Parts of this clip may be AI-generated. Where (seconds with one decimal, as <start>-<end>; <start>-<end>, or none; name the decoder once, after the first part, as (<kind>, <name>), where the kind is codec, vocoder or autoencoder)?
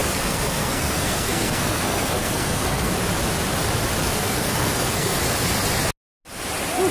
0.0-2.9 (codec, SNAC); 4.0-5.2